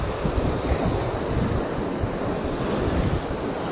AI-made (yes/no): no